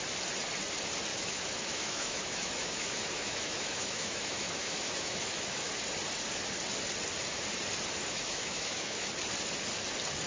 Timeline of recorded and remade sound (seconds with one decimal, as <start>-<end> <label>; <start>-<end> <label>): 0.0-1.1 recorded; 1.1-5.7 remade; 5.7-8.0 recorded; 8.0-9.1 remade; 9.1-10.3 recorded

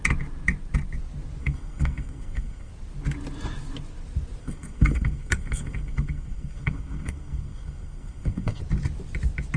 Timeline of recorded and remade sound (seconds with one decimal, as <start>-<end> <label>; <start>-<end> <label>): 0.0-1.4 recorded; 1.4-2.7 remade; 2.7-4.4 recorded; 4.4-8.6 remade; 8.6-9.6 recorded

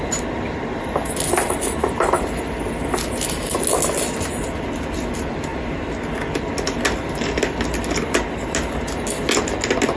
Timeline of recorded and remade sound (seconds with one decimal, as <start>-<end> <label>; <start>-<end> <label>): 0.0-10.0 recorded

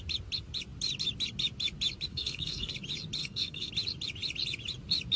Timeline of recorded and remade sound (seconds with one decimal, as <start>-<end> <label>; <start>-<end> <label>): 0.0-2.1 recorded; 2.1-2.7 remade; 2.7-3.2 recorded; 3.2-3.7 remade; 3.7-5.2 recorded